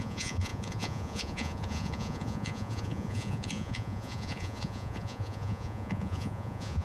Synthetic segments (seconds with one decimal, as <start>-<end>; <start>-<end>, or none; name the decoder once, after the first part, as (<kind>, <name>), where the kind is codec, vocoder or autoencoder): 0.0-6.8 (vocoder, Vocos)